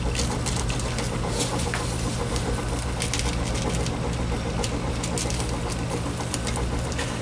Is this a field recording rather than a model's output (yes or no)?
yes